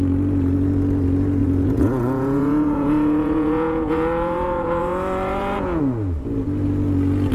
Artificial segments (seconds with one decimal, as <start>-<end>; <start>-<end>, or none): 1.4-5.8